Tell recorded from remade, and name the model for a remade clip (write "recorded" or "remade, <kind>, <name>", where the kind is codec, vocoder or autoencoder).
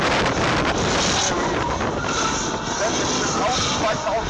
recorded